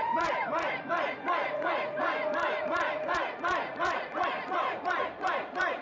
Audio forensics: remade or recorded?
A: remade